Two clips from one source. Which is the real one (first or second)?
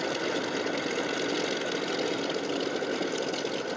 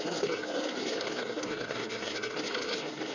first